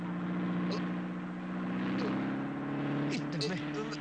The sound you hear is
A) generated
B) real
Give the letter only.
B